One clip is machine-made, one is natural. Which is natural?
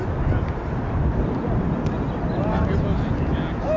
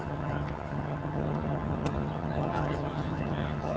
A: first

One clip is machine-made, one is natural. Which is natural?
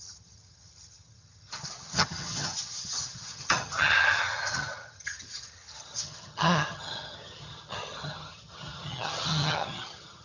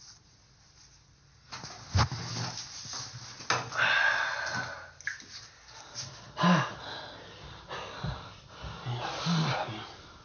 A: second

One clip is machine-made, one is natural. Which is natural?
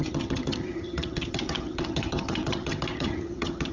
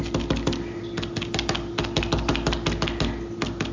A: second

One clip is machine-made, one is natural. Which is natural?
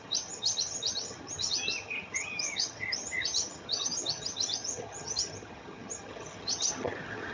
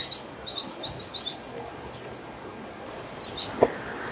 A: second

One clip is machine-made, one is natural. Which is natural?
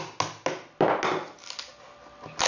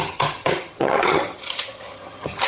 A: first